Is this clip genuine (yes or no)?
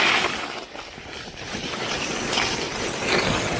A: yes